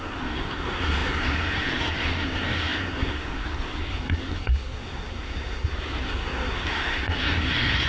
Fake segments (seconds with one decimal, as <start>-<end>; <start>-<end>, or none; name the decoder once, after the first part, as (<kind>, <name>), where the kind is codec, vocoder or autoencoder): 0.0-7.9 (codec, SNAC)